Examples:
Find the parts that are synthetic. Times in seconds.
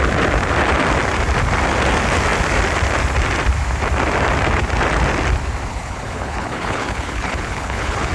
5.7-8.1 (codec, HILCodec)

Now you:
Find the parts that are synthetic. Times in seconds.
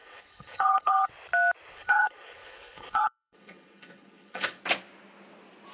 0.0-1.1 (codec, HILCodec); 1.7-4.6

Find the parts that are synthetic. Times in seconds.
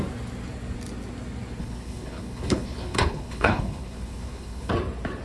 1.6-4.7 (codec, HILCodec)